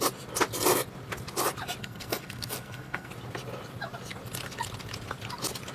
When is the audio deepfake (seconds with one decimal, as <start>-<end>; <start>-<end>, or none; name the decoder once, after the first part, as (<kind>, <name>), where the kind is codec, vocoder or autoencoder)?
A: 1.8-3.1 (codec, SNAC)